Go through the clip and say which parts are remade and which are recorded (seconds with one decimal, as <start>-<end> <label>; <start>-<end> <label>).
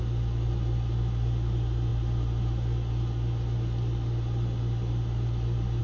0.0-5.8 recorded